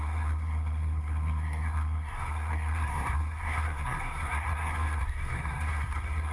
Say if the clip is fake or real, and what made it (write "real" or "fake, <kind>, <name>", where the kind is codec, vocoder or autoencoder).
fake, codec, SNAC